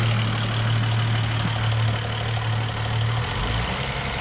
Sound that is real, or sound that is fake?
real